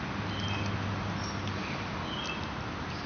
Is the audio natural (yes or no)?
yes